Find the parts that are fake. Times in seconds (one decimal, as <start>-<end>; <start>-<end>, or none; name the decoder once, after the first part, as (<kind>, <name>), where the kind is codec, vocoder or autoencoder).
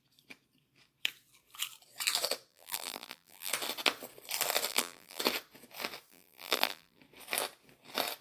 2.5-3.5 (vocoder, BigVGAN v2); 4.7-5.2; 6.1-7.0